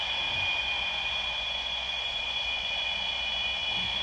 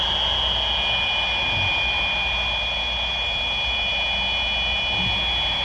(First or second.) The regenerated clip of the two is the first